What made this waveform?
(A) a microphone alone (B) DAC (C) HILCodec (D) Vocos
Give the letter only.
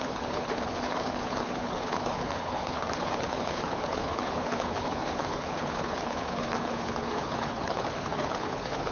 C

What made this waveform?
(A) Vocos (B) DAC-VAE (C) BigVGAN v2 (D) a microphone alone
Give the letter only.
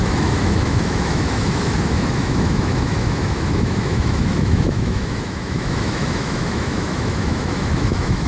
B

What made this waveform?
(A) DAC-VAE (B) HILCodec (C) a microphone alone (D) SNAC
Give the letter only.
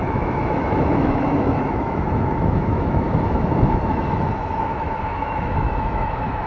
A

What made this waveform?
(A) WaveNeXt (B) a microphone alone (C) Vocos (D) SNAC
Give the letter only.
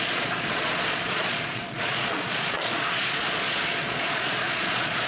C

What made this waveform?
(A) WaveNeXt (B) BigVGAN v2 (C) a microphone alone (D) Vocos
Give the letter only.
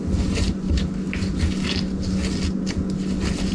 C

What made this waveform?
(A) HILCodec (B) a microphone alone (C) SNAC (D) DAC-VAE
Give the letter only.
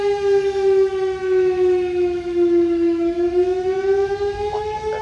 D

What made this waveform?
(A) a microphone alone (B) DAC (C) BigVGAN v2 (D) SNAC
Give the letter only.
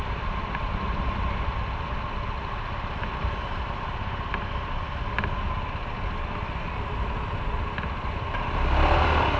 A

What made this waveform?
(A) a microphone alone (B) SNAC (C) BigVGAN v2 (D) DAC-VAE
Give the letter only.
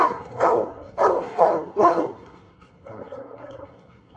B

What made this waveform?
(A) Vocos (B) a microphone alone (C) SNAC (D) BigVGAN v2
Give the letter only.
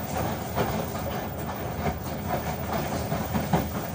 B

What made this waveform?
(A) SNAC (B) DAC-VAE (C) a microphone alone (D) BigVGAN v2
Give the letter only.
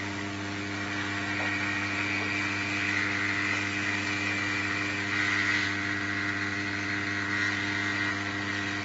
C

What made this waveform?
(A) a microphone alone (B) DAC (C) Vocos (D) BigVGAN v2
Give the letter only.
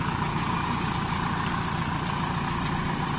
A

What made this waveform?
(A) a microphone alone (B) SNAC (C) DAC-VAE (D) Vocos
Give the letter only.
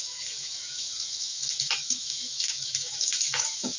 C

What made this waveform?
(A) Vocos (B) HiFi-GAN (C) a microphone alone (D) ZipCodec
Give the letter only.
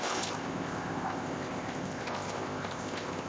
D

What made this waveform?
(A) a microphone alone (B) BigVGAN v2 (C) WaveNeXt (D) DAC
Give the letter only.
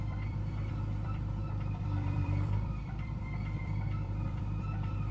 B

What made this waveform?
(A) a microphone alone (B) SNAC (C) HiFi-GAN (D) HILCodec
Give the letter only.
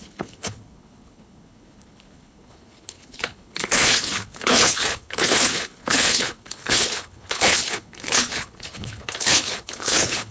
D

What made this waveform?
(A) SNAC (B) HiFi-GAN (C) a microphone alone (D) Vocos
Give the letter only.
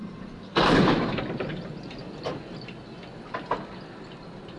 C